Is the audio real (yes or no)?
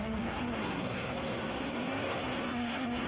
no